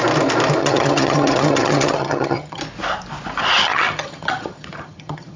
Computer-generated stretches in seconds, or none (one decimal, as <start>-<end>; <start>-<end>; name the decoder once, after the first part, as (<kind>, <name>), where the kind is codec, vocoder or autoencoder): 0.6-2.6 (vocoder, HiFi-GAN); 3.6-5.4